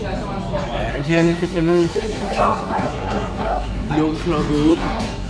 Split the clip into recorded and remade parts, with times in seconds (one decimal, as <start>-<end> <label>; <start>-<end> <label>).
0.0-0.9 recorded; 0.9-3.9 remade; 3.9-4.7 recorded; 4.7-5.3 remade